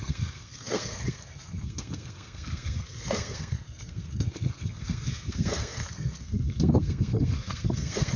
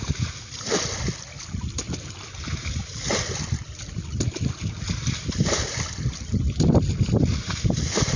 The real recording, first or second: second